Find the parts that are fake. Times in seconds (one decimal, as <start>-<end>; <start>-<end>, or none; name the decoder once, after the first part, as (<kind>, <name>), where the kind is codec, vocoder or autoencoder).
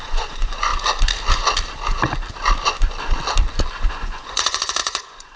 0.0-0.7 (vocoder, Vocos); 3.9-5.4